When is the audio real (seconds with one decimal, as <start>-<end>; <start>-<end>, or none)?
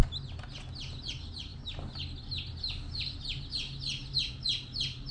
0.0-5.1